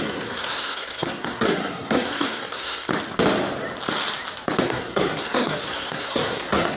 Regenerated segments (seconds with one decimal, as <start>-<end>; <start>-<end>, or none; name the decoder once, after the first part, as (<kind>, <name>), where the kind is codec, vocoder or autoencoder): 0.0-2.9 (codec, SNAC); 4.6-6.8